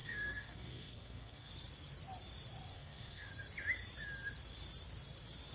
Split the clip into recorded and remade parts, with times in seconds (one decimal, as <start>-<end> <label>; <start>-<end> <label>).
0.0-1.5 remade; 1.5-2.7 recorded; 2.7-3.3 remade; 3.3-5.5 recorded